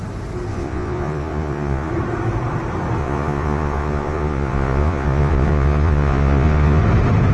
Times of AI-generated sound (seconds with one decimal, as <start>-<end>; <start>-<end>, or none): 0.5-1.9; 3.0-6.8